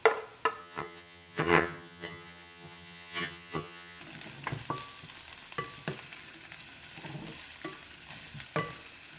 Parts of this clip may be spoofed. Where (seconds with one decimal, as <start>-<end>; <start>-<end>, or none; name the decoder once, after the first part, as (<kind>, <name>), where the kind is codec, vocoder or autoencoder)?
0.6-4.0 (vocoder, HiFi-GAN)